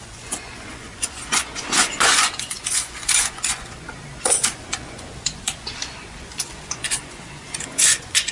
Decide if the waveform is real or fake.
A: fake